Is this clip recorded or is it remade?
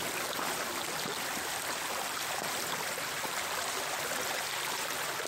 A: recorded